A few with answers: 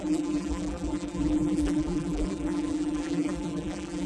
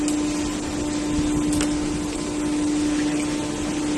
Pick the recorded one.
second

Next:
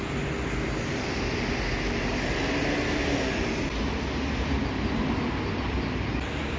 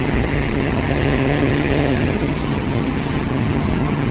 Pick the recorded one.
first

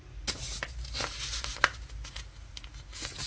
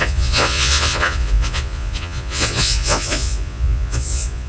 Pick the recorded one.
first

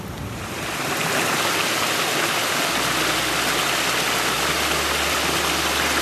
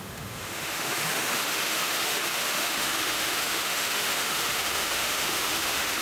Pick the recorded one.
first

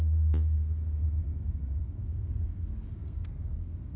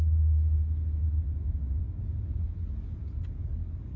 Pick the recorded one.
second